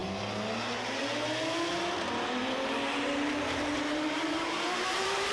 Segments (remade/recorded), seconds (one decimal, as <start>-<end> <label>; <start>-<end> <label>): 0.0-2.4 recorded; 2.4-5.3 remade